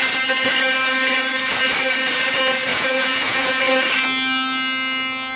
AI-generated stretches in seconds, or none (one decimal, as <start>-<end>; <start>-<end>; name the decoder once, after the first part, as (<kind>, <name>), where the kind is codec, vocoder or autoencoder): 2.7-3.6 (vocoder, Vocos)